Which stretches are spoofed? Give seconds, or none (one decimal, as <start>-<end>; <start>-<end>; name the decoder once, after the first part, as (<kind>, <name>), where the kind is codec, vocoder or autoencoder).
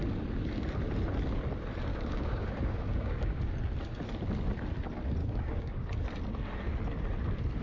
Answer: 1.9-3.4 (codec, DAC); 5.2-5.9